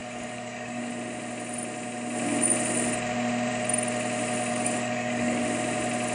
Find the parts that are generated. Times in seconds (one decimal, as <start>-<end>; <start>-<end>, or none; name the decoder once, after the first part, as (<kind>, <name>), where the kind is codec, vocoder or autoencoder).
0.0-0.9 (codec, DAC); 4.5-5.4